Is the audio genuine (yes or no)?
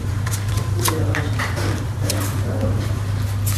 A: no